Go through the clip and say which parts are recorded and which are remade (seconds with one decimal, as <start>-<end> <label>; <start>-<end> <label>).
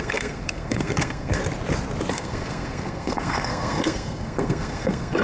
0.0-1.4 remade; 1.4-2.1 recorded; 2.1-5.2 remade